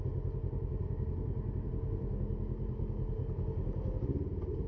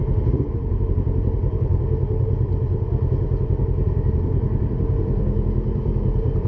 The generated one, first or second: second